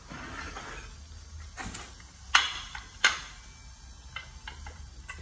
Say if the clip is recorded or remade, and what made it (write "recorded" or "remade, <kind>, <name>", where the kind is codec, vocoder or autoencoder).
recorded